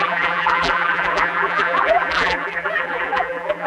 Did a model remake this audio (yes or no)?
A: yes